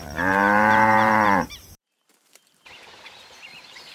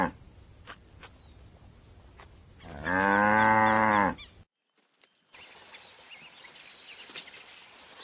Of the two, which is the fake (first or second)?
first